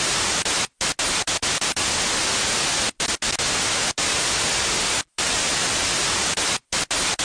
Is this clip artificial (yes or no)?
no